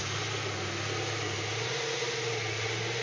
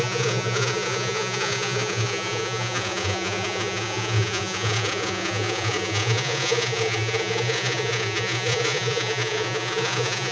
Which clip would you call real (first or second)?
first